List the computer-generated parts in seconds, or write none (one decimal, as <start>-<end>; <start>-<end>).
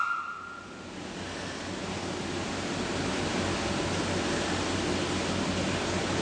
none